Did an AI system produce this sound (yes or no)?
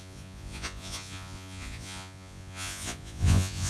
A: yes